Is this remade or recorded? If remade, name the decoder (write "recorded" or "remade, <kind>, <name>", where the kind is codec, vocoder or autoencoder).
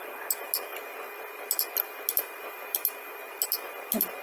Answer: recorded